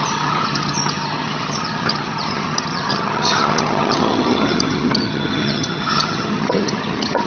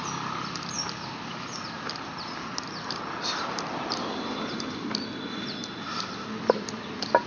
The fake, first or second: first